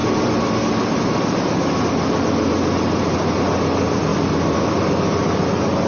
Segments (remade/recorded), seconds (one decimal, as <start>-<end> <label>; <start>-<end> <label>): 0.0-0.5 remade; 0.5-4.1 recorded; 4.1-5.0 remade; 5.0-5.9 recorded